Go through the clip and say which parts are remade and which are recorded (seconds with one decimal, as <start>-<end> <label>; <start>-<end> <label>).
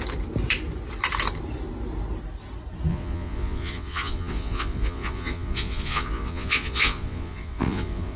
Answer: 0.0-2.9 recorded; 2.9-8.2 remade